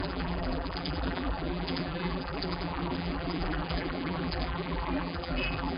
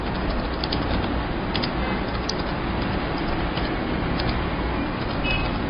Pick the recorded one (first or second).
second